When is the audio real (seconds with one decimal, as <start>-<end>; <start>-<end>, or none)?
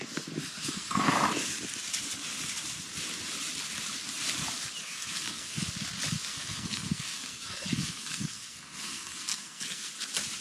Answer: 0.0-0.6; 1.1-4.8; 5.7-6.3; 9.9-10.4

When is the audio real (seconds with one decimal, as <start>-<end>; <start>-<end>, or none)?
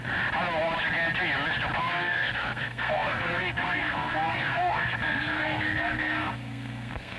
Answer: 0.0-1.8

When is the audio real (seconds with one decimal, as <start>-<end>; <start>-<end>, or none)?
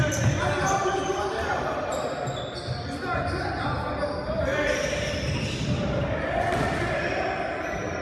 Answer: 0.0-8.0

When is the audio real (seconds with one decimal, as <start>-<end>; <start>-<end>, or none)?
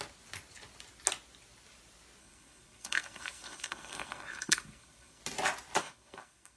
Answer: 0.0-2.2; 5.2-5.8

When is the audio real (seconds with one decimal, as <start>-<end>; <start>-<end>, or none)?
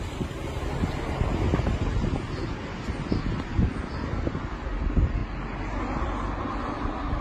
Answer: 0.0-7.2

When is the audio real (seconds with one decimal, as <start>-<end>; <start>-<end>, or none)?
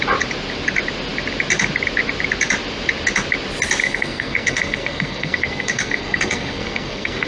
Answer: 0.0-3.8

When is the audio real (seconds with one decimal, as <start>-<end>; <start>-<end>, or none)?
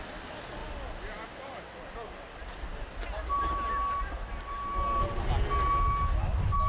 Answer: 0.0-6.7